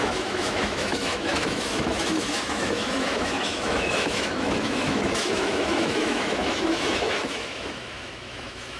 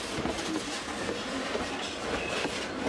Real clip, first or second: second